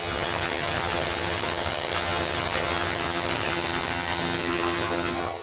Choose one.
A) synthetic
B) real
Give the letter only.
A